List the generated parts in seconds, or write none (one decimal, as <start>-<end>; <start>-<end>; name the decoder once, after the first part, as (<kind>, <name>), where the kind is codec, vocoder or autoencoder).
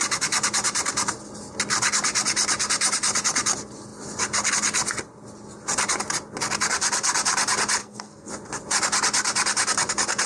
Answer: 7.8-8.3 (codec, SNAC)